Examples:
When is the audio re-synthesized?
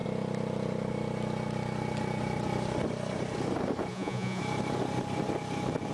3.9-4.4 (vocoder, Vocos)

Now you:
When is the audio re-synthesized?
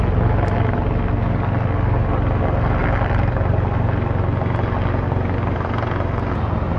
2.8-3.5 (vocoder, BigVGAN v2)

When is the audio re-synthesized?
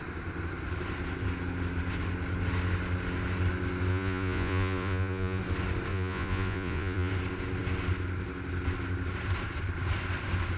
3.9-5.4 (vocoder, Vocos); 5.9-7.1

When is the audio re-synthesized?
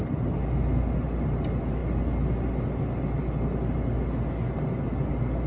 none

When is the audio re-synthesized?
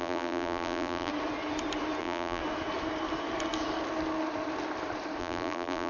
0.0-1.1 (vocoder, BigVGAN v2); 2.0-2.4; 5.2-5.9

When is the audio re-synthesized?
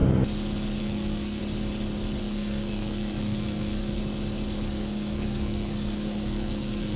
0.8-1.4 (codec, SNAC); 2.2-4.0; 4.7-7.0